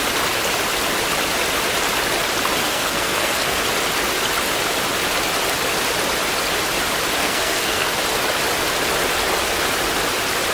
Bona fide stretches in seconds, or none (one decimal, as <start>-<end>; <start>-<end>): 0.0-2.6; 3.6-7.2; 8.0-10.5